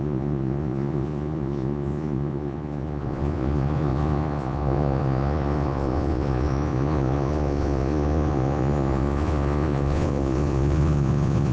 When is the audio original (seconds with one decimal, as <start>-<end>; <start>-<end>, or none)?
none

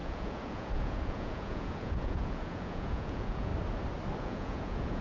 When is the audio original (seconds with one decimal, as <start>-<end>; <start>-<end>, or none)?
3.5-4.2

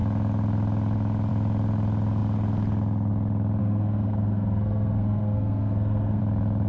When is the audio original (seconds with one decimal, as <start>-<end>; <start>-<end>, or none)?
0.0-3.6; 6.2-6.7